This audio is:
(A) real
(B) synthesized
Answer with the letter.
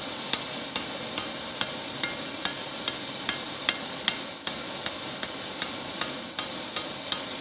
A